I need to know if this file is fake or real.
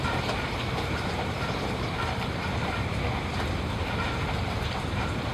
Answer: fake